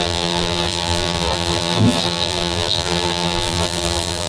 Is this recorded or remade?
remade